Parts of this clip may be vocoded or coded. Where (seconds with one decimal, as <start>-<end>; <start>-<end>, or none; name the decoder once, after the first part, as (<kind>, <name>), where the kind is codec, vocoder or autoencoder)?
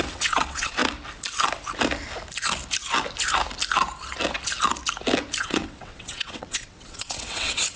0.0-0.8 (vocoder, WaveNeXt); 5.4-7.8